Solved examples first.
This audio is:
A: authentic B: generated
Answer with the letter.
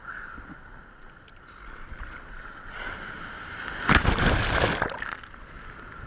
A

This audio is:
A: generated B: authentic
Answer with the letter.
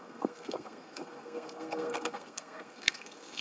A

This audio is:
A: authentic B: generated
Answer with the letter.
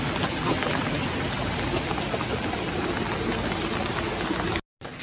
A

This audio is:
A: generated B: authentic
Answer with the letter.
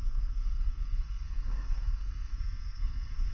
A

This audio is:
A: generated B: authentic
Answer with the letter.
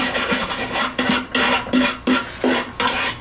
B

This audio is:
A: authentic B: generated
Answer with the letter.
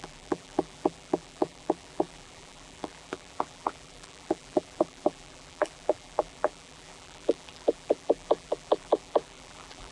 B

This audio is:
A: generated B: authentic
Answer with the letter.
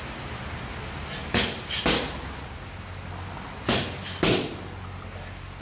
B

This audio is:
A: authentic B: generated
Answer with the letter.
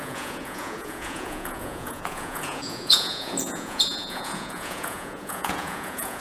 B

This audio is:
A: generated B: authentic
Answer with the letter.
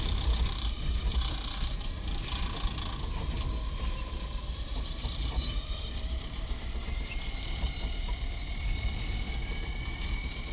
B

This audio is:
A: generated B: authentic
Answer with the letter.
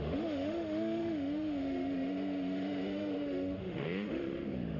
A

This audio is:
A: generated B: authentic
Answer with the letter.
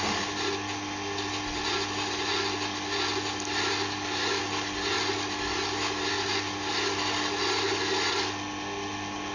B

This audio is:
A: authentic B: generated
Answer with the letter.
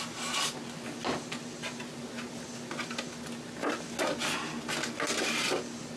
A